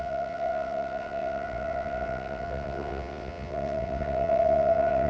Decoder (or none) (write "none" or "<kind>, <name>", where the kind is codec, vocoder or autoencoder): vocoder, WaveNeXt